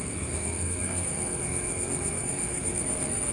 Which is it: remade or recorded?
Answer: remade